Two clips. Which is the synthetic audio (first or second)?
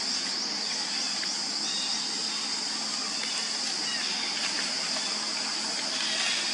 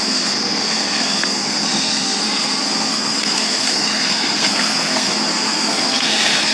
second